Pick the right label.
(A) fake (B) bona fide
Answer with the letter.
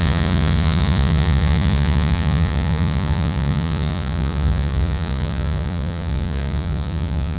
A